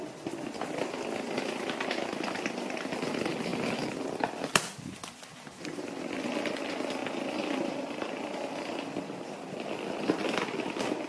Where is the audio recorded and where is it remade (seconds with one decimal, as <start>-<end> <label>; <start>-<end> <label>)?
0.0-11.1 recorded